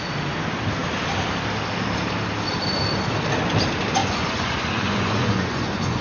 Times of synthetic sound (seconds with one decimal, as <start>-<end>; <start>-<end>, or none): 4.0-6.0